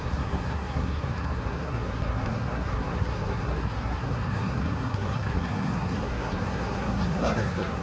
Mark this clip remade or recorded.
remade